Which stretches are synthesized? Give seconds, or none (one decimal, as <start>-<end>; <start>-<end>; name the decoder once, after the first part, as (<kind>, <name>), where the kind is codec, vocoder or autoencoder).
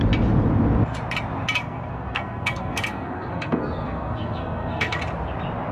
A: 1.6-5.0 (codec, SNAC)